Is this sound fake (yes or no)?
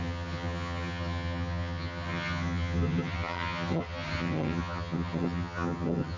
yes